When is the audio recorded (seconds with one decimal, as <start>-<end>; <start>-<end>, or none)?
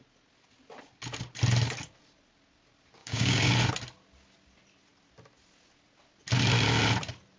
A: 0.0-3.0; 3.5-7.4